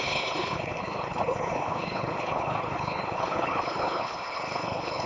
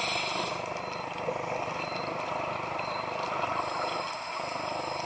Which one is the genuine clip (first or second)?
second